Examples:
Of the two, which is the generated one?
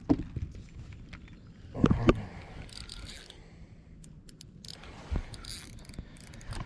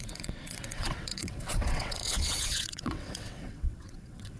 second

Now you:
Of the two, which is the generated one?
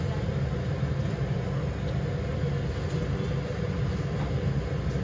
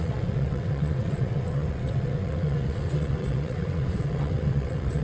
second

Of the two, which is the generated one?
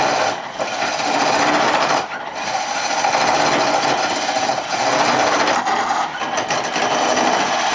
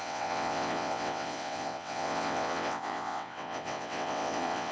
second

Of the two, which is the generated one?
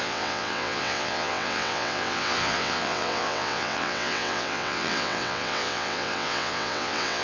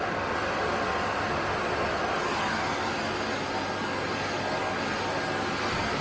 first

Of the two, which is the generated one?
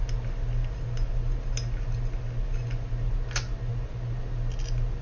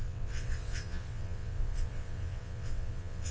second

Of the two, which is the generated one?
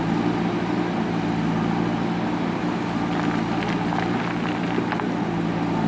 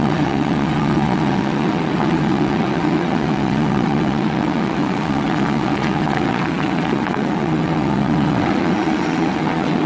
second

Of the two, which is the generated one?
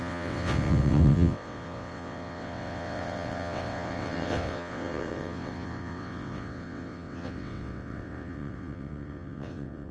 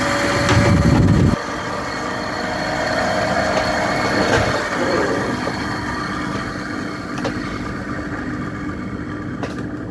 first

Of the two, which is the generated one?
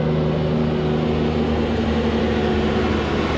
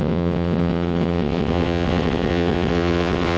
second